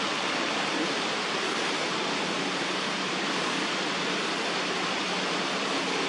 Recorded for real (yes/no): yes